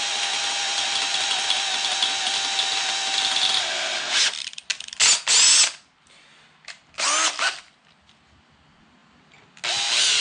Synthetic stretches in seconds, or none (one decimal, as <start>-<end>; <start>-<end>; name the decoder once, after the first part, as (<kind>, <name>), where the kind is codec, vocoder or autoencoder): none